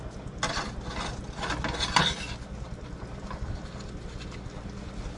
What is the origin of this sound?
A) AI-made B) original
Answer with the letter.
B